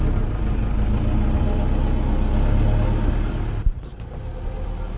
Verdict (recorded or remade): recorded